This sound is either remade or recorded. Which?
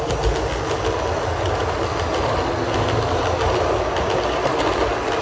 recorded